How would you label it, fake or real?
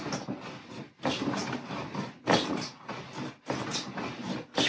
real